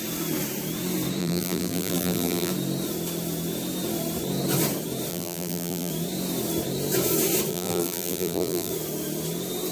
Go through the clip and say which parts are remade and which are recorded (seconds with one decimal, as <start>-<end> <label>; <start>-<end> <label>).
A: 0.0-1.2 recorded; 1.2-2.5 remade; 2.5-5.1 recorded; 5.1-5.9 remade; 5.9-7.5 recorded; 7.5-8.7 remade; 8.7-9.7 recorded